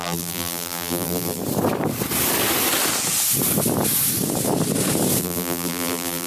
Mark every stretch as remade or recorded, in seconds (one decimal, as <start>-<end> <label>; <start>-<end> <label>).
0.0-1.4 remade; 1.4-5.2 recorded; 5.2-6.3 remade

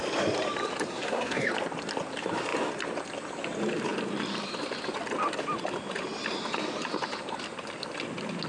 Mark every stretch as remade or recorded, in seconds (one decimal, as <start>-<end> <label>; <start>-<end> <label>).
0.0-0.9 recorded; 0.9-1.5 remade; 1.5-8.5 recorded

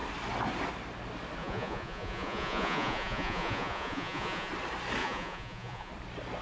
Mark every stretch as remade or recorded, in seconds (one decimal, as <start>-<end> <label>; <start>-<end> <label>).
0.0-1.4 recorded; 1.4-4.5 remade; 4.5-5.0 recorded; 5.0-5.9 remade; 5.9-6.4 recorded

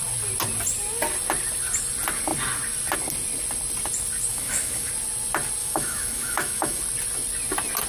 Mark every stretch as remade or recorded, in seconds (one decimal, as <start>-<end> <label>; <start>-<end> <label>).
0.0-4.3 recorded; 4.3-4.9 remade; 4.9-5.6 recorded; 5.6-6.8 remade; 6.8-7.9 recorded

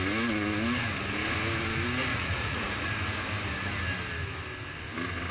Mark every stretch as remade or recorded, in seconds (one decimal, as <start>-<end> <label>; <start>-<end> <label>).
0.0-2.1 recorded; 2.1-2.9 remade; 2.9-5.3 recorded